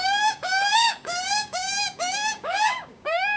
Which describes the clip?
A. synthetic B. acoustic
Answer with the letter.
A